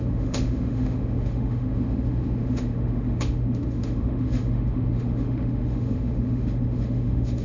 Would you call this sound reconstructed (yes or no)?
yes